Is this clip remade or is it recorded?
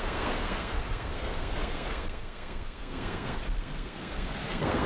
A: remade